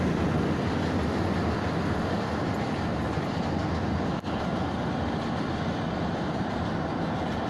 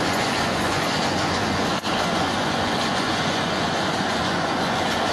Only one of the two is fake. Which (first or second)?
second